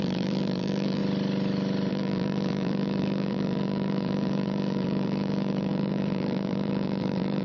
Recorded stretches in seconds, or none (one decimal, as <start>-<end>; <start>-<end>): 1.0-1.9